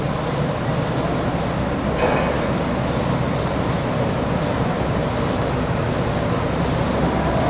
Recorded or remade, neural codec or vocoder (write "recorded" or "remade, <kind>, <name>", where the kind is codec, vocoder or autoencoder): recorded